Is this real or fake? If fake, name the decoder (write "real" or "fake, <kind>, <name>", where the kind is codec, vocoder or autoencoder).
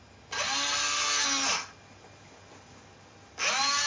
real